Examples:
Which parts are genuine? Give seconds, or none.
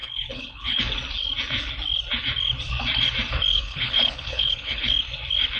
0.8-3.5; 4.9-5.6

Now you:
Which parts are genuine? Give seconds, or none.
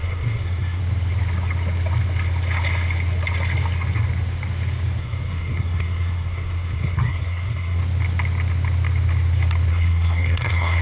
0.8-5.0; 7.8-9.7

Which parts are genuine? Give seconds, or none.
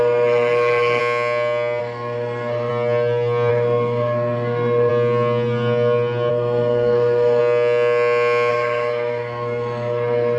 1.0-1.8; 2.7-3.5; 4.9-6.3; 7.4-8.5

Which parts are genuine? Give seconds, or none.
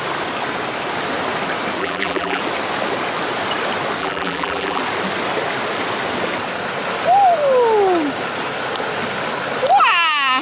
0.0-1.8; 2.4-4.0; 4.8-10.4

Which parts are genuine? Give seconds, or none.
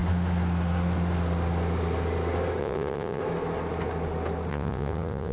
0.0-2.6; 3.2-4.5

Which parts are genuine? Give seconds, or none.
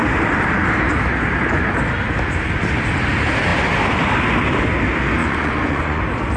0.0-5.2; 6.0-6.4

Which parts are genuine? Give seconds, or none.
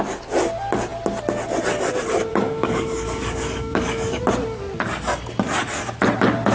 0.0-2.3; 4.2-6.5